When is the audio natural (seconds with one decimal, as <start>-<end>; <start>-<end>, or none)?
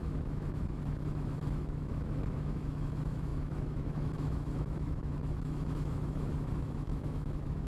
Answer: none